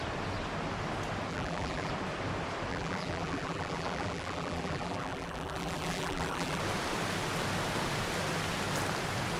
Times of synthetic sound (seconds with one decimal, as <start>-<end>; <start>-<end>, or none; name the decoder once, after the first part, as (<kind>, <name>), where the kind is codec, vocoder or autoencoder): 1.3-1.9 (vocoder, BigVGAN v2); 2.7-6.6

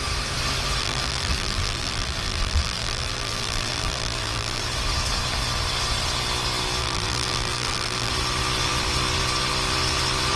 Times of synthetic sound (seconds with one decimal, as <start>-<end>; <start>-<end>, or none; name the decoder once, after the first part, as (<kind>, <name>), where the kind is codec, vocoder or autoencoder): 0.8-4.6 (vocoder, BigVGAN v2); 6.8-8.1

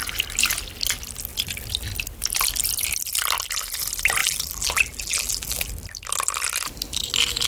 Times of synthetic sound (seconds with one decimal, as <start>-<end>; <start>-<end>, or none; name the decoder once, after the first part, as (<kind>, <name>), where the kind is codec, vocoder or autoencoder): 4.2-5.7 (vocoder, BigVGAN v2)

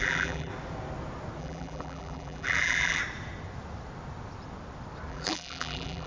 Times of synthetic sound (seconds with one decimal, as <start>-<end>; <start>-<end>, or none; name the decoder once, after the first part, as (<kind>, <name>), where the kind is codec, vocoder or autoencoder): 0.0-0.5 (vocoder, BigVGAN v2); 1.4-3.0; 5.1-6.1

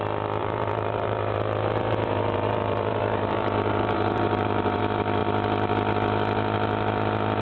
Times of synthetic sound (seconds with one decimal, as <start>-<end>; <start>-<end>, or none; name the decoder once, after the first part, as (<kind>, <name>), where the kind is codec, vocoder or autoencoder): 0.4-4.8 (vocoder, BigVGAN v2)

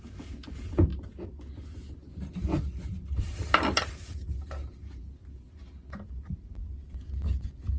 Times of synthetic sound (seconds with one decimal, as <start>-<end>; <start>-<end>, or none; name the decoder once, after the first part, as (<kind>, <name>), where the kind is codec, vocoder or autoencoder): 0.0-0.9 (vocoder, BigVGAN v2); 2.6-6.6